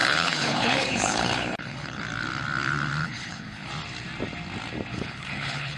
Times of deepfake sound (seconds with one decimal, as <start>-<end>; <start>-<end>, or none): 0.0-2.0; 3.0-3.7; 4.9-5.8